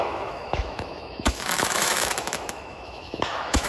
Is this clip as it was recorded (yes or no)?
no